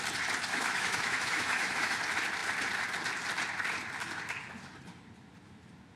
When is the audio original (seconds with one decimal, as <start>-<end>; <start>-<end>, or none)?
0.0-0.5; 2.0-6.0